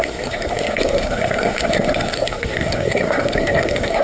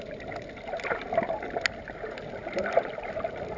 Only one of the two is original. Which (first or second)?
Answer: second